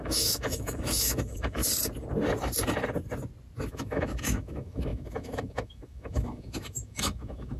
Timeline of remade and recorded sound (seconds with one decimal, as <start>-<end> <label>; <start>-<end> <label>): 0.0-1.6 remade; 1.6-3.7 recorded; 3.7-7.6 remade